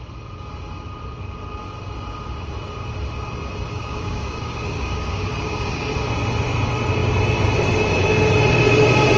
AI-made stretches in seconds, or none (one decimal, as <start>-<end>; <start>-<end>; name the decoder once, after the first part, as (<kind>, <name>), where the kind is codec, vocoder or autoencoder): 3.7-5.9 (codec, DAC)